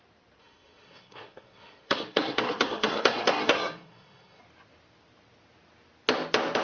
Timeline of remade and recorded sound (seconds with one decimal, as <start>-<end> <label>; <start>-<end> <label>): 0.0-0.4 recorded; 0.4-4.4 remade; 4.4-6.6 recorded